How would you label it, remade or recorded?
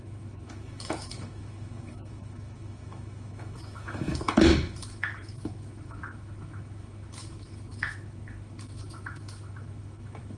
remade